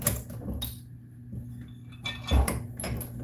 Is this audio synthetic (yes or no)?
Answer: no